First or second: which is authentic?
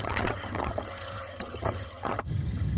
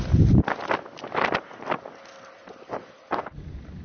second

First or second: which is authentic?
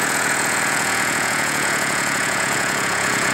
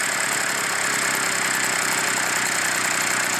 second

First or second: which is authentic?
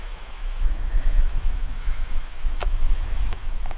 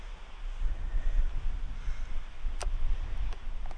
second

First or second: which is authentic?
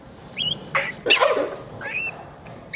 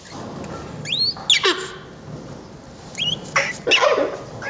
second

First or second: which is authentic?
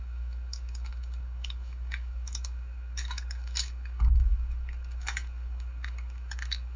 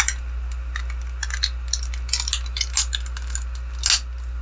second